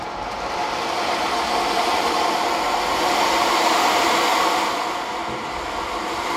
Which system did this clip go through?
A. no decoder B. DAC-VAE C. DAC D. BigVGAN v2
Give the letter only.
A